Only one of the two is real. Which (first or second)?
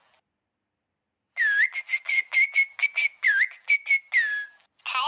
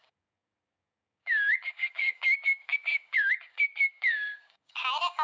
first